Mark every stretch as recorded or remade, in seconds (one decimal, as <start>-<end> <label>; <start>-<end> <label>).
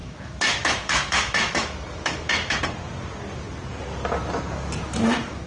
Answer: 0.0-2.6 remade; 2.6-5.5 recorded